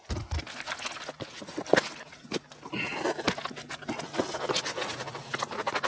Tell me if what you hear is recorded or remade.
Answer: recorded